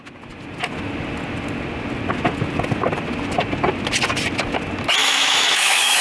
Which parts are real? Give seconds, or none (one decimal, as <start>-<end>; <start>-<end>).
0.0-5.0

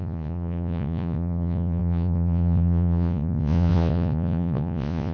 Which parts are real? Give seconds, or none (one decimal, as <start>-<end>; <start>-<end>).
none